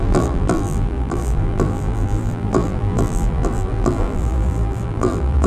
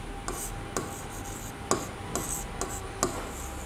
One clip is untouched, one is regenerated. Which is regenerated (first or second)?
first